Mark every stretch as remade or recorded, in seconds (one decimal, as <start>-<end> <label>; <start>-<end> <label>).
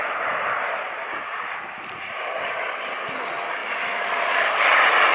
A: 0.0-3.6 recorded; 3.6-5.1 remade